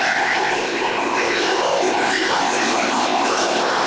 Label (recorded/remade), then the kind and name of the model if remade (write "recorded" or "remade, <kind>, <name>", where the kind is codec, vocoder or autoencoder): remade, codec, ZipCodec